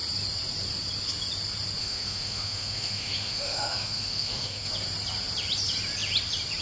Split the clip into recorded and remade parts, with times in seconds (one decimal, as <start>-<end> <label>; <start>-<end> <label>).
0.0-1.8 recorded; 1.8-4.7 remade; 4.7-6.6 recorded